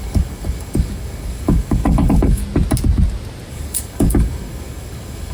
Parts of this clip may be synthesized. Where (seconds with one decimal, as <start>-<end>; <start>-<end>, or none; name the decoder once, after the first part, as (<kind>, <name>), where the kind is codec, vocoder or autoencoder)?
0.0-2.4 (codec, DAC); 3.5-5.3